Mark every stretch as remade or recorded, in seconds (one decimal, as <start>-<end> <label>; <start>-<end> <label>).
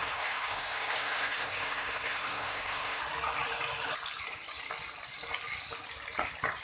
0.0-3.0 remade; 3.0-6.6 recorded